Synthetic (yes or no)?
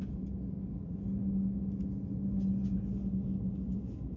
no